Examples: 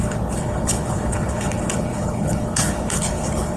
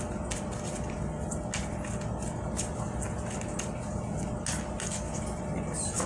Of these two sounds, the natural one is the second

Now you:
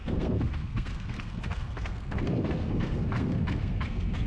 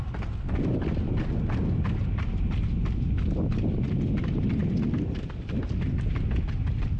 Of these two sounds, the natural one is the second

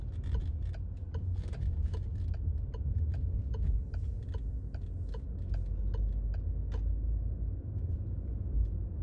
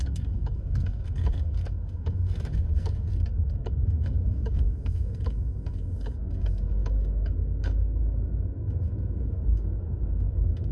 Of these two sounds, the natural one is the first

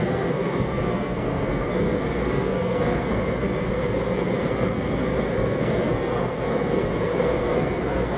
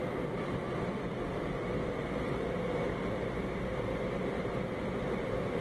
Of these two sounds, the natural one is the second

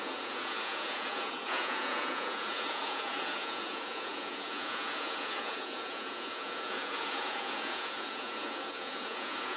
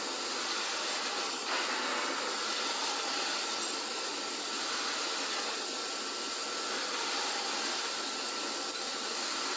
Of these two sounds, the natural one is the second